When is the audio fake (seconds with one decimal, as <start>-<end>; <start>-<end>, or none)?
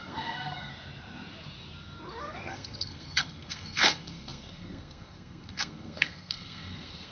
0.0-0.7; 2.2-7.1